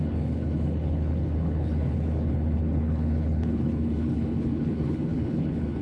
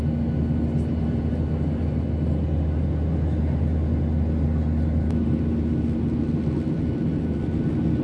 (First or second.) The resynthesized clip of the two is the first